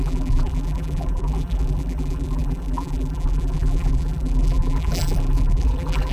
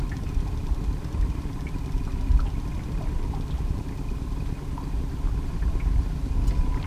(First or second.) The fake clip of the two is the first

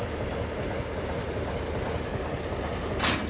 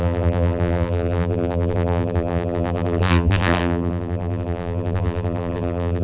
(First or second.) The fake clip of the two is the second